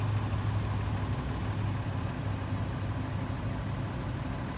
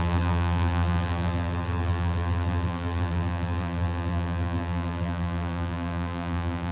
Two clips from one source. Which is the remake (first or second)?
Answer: second